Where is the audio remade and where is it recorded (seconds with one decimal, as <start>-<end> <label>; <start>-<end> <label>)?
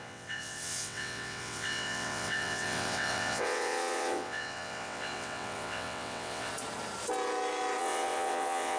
0.0-6.5 remade; 6.5-7.8 recorded; 7.8-8.8 remade